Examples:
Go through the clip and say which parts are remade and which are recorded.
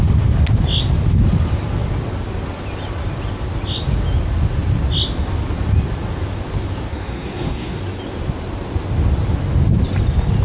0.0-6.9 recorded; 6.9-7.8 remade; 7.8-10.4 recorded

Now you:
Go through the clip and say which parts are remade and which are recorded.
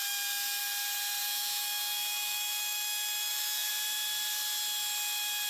0.0-0.6 remade; 0.6-1.2 recorded; 1.2-3.7 remade; 3.7-5.5 recorded